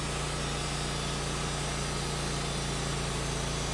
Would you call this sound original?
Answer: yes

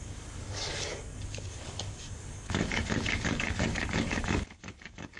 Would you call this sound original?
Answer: no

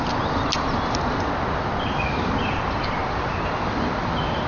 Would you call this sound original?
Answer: yes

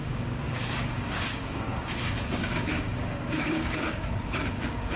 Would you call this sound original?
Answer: no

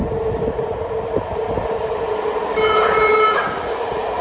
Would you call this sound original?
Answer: yes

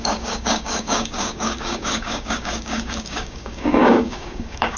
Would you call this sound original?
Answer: no